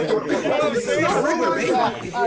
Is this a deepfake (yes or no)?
no